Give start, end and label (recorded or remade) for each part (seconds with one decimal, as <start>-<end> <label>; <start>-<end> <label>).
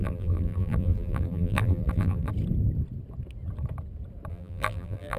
0.0-2.3 remade; 2.3-4.3 recorded; 4.3-5.2 remade